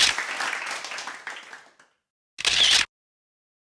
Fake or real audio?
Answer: real